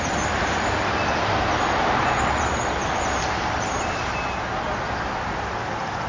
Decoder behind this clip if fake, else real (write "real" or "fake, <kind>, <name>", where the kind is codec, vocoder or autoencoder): real